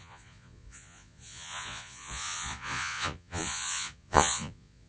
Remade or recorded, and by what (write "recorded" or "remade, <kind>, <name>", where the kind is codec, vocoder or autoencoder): remade, vocoder, Vocos